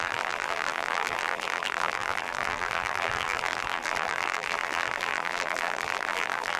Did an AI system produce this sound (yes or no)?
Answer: yes